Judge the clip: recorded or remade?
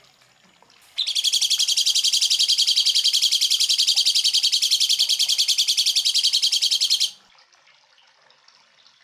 recorded